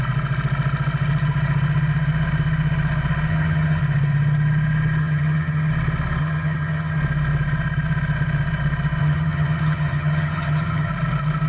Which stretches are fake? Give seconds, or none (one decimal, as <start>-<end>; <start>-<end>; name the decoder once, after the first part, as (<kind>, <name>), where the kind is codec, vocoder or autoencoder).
3.3-3.8 (vocoder, HiFi-GAN); 5.0-5.7; 6.2-7.0; 9.0-10.9